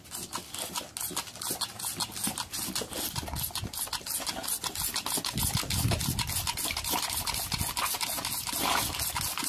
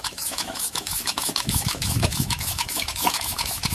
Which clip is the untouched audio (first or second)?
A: first